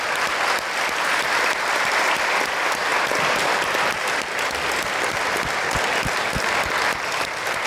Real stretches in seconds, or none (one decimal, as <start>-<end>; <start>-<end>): 0.0-7.7